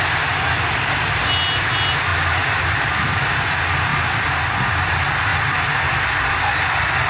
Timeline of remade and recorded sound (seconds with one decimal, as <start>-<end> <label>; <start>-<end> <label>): 0.0-7.1 recorded